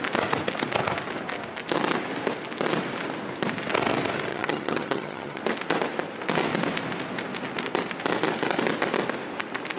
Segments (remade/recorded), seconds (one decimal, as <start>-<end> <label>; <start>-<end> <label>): 0.0-4.3 recorded; 4.3-5.4 remade; 5.4-9.8 recorded